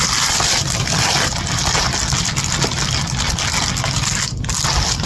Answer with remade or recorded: recorded